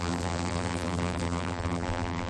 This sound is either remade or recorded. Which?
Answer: remade